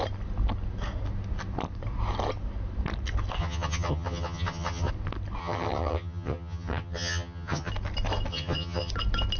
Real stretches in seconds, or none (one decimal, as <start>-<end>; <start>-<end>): 0.0-3.4; 4.9-5.4; 7.7-8.3; 8.9-9.4